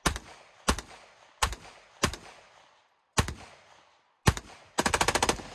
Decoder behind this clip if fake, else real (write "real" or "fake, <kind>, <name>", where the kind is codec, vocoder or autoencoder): real